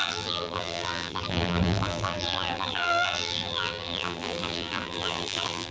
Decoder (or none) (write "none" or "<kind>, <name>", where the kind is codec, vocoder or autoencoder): vocoder, BigVGAN v2